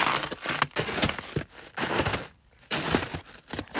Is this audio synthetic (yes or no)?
no